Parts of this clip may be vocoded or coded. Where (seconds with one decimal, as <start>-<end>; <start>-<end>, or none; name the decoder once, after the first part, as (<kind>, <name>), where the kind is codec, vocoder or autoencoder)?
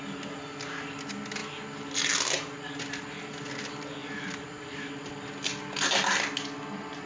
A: 4.0-5.1 (vocoder, BigVGAN v2)